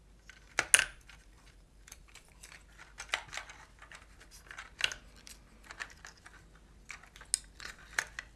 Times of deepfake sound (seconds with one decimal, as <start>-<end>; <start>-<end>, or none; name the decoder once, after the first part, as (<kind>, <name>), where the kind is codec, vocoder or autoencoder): 0.9-2.3 (vocoder, BigVGAN v2)